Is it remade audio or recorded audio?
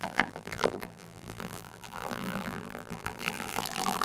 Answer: remade